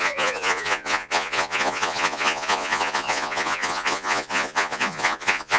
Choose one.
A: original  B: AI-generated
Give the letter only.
B